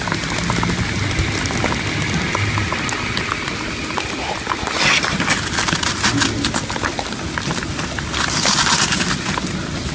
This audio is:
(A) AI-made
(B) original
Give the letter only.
B